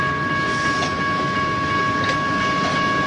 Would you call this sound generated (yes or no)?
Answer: no